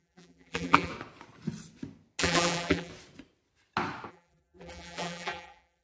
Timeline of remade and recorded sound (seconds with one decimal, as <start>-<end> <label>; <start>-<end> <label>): 0.0-0.9 remade; 0.9-2.2 recorded; 2.2-2.9 remade; 2.9-4.1 recorded; 4.1-5.8 remade